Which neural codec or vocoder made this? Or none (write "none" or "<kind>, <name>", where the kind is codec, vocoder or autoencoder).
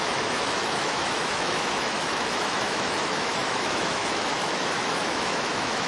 autoencoder, DAC-VAE